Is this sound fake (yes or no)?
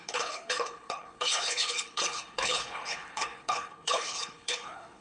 yes